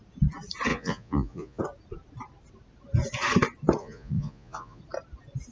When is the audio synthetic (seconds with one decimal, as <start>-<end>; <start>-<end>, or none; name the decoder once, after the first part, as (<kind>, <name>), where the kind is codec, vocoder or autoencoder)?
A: 0.7-1.6 (vocoder, Vocos); 3.8-4.8

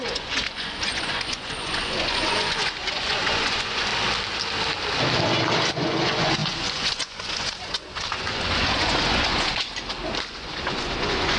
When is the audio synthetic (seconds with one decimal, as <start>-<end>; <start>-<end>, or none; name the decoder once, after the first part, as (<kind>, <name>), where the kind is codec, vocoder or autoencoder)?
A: 0.0-3.9 (vocoder, Vocos); 5.7-9.7; 10.3-11.4